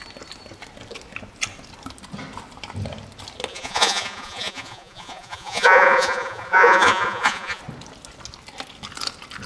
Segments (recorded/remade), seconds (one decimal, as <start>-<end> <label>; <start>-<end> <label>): 0.0-3.5 recorded; 3.5-7.6 remade; 7.6-9.5 recorded